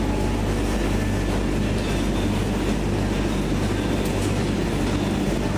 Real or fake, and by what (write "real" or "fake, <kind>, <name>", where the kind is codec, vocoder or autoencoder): real